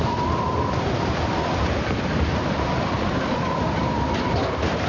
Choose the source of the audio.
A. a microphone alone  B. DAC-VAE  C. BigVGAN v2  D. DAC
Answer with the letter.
C